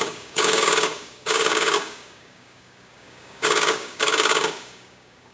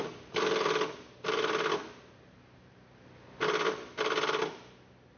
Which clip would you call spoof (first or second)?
first